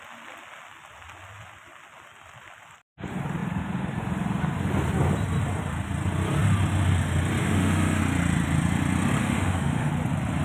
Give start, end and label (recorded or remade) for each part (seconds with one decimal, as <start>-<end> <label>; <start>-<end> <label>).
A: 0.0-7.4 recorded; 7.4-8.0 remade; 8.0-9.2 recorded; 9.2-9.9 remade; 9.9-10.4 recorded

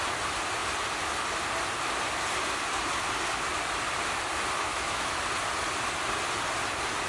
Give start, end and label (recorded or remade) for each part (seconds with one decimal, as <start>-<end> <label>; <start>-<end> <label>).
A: 0.0-4.7 recorded; 4.7-5.2 remade; 5.2-7.1 recorded

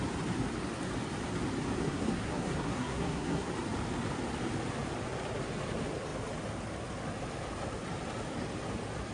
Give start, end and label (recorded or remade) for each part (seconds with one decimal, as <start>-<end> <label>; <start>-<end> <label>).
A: 0.0-1.8 recorded; 1.8-3.5 remade; 3.5-9.1 recorded